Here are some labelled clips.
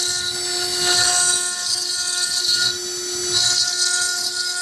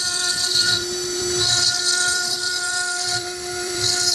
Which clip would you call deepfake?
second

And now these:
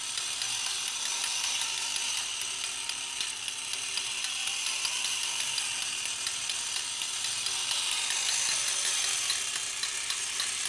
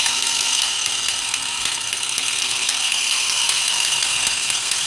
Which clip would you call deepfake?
second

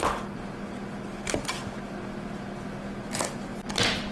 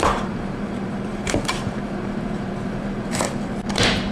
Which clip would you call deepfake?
second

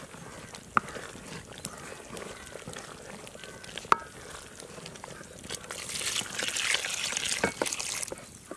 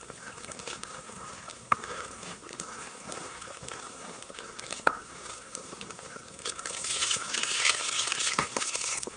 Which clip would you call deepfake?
second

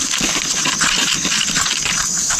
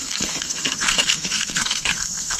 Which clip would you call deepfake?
second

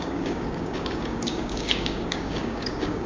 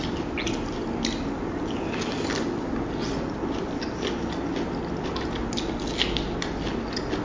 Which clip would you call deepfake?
first